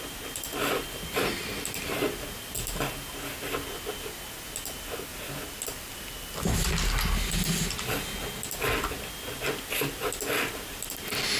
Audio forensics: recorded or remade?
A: recorded